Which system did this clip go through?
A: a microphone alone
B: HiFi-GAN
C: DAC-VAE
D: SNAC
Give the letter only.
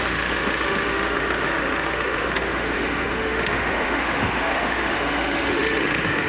C